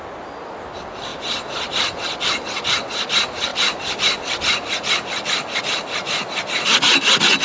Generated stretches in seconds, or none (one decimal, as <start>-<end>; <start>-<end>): none

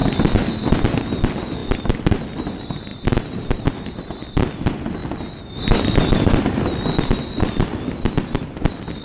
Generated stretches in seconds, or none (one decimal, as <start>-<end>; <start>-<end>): 0.0-0.7; 1.6-2.2; 2.9-3.7

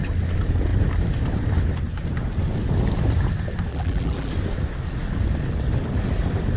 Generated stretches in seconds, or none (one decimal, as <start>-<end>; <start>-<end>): 3.7-4.3

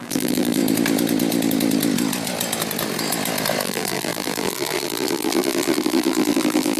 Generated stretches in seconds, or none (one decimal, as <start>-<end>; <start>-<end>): 0.0-0.6; 3.6-6.8